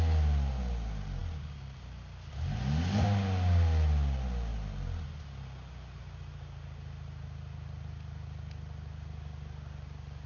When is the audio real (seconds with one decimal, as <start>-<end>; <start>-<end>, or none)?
0.0-10.3